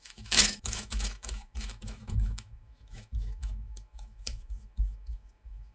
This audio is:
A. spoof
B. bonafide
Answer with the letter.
A